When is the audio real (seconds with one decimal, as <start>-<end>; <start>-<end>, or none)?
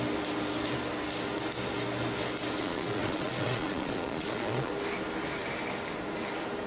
0.0-2.6; 4.7-6.7